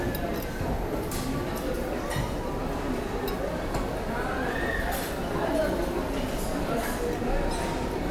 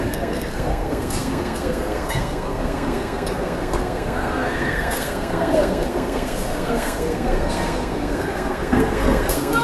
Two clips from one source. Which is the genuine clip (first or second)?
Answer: first